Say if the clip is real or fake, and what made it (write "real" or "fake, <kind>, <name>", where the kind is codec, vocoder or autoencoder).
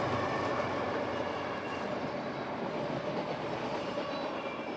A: real